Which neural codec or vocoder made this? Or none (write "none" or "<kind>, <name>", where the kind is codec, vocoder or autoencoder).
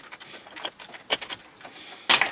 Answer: none